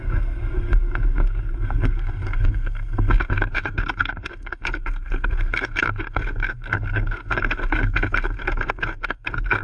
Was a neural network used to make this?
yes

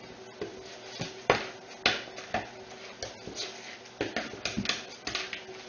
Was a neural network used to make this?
no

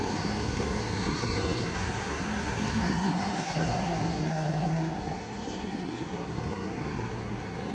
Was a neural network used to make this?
yes